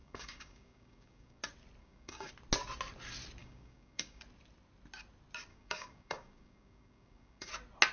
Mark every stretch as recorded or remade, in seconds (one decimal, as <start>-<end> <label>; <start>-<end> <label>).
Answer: 0.0-1.4 remade; 1.4-1.8 recorded; 1.8-2.3 remade; 2.3-3.4 recorded; 3.4-4.2 remade; 4.2-5.5 recorded; 5.5-7.5 remade; 7.5-7.9 recorded